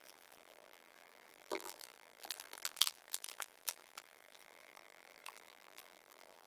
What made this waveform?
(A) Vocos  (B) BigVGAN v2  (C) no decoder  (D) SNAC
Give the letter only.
B